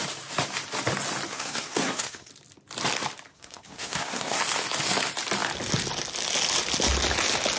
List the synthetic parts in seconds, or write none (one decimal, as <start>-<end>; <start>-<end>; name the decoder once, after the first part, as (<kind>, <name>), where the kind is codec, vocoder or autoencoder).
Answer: 1.3-2.3 (codec, SNAC); 3.3-4.4

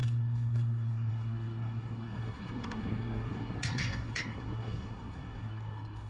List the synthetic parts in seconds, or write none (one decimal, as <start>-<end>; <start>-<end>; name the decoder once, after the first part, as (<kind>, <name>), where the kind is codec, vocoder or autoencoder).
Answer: 0.0-6.1 (codec, SNAC)

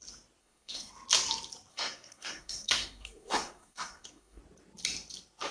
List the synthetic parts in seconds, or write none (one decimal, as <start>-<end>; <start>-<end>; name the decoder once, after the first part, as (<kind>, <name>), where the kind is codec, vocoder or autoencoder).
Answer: 0.4-0.9 (codec, SNAC); 1.7-4.4

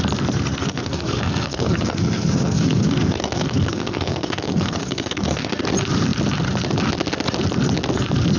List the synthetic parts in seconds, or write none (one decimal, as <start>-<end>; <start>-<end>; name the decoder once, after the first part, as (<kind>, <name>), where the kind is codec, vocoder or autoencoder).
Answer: 0.6-5.6 (codec, SNAC)

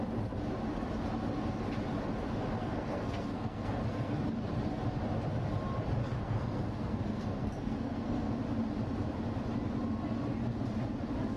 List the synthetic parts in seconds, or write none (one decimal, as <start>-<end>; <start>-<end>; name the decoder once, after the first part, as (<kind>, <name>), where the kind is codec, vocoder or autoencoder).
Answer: 2.6-4.2 (codec, SNAC); 6.0-8.3

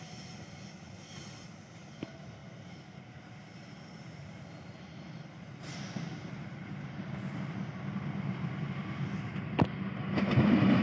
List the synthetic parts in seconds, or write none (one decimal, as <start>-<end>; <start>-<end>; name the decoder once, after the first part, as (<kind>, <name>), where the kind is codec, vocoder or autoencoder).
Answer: none

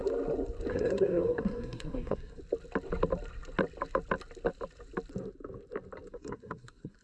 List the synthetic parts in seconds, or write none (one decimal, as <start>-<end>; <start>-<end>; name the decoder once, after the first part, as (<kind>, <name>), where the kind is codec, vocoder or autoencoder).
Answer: 0.7-2.4 (codec, SNAC); 6.1-7.0

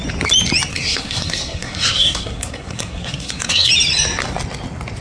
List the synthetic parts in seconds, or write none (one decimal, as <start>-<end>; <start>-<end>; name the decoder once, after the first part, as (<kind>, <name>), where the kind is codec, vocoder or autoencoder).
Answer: 0.7-3.7 (codec, SNAC)